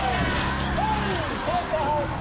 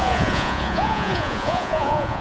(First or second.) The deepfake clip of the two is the second